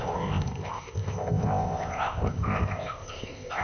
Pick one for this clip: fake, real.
fake